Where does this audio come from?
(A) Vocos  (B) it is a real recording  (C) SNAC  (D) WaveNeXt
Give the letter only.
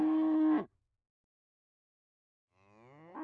B